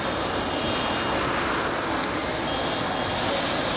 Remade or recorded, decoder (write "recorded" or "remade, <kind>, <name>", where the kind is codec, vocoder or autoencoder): recorded